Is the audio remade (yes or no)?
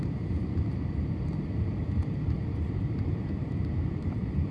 yes